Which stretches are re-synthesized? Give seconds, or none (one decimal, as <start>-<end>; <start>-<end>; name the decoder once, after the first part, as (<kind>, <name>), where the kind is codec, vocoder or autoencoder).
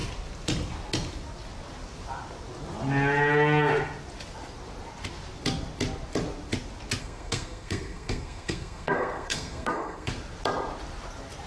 7.0-10.1 (codec, SNAC)